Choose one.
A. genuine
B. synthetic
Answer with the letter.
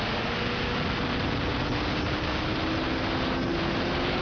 A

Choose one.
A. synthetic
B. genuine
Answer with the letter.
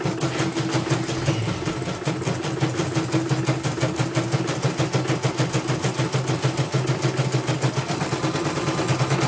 B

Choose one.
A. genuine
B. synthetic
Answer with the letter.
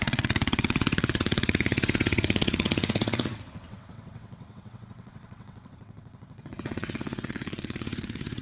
B